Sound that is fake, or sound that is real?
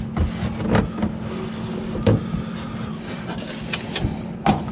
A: real